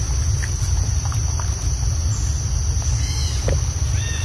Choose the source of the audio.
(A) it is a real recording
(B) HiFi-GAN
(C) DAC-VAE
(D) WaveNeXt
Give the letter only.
A